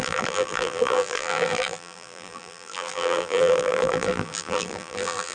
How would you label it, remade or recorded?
remade